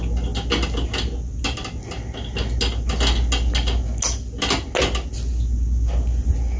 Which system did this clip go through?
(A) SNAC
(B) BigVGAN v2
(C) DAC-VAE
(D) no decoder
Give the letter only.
D